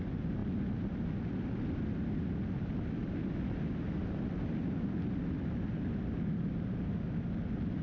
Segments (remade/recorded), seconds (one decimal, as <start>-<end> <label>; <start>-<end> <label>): 0.0-7.8 recorded